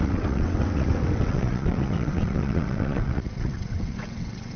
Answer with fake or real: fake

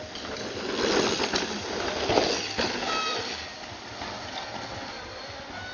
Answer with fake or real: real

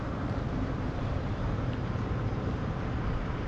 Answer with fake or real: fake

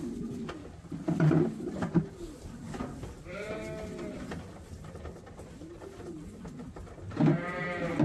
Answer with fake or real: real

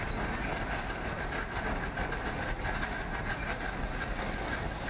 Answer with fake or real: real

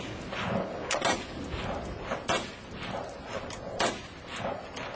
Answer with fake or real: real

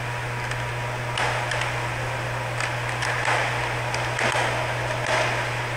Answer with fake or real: real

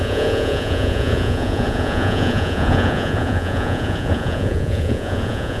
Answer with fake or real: fake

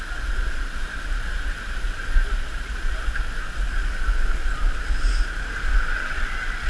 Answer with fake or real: real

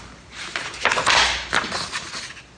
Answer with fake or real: real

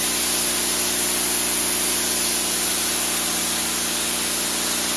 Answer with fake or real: real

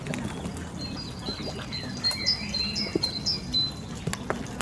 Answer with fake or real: real